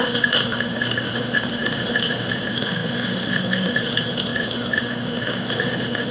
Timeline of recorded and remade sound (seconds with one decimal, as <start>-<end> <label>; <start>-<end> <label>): 0.0-6.1 remade